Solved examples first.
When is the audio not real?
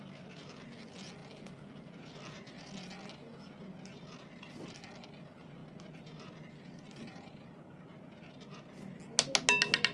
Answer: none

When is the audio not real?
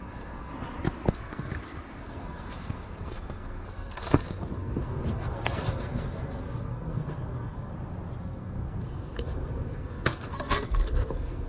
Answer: 0.0-0.5 (codec, SNAC); 1.1-1.5; 2.0-7.7; 8.2-11.5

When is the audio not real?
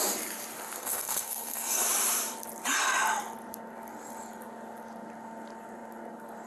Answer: 0.8-1.8 (codec, SNAC)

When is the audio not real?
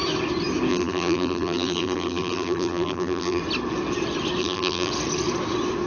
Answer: 0.7-3.4 (vocoder, BigVGAN v2); 4.4-4.9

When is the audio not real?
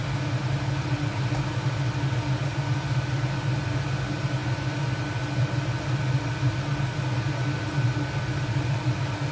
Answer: none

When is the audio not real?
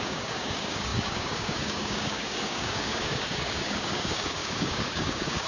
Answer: 0.0-5.5 (codec, DAC)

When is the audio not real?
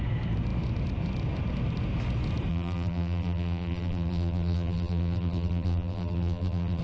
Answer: 2.5-6.8 (vocoder, BigVGAN v2)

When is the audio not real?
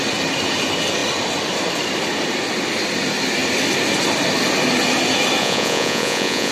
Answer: 5.4-6.5 (vocoder, Vocos)